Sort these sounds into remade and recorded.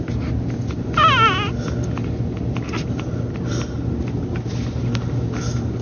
recorded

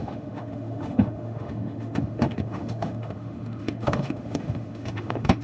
remade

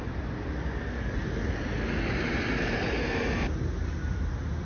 recorded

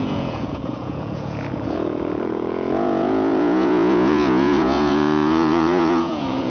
remade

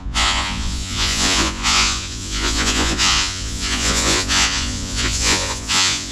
remade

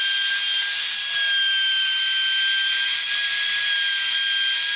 recorded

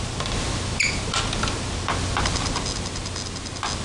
recorded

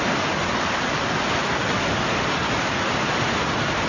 recorded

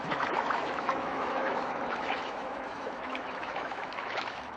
remade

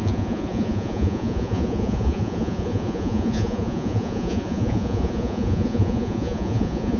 remade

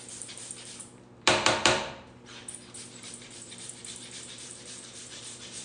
remade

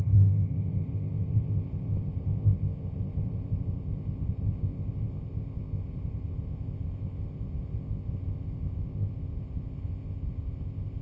remade